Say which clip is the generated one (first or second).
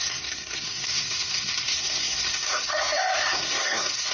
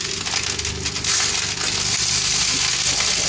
first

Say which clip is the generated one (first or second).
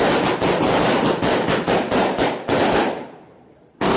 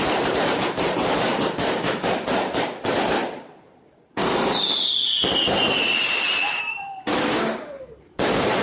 second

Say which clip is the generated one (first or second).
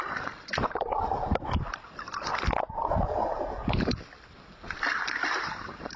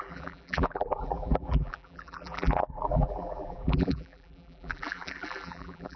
second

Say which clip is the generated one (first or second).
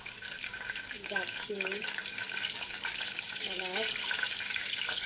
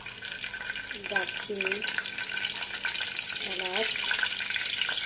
first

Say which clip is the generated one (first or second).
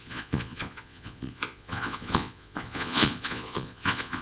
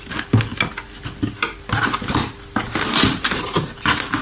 first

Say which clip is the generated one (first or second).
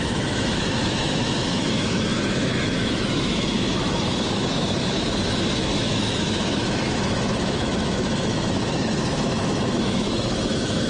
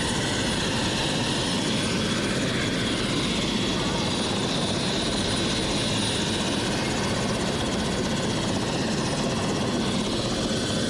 first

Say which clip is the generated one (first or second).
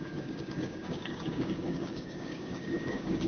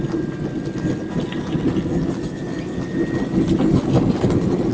first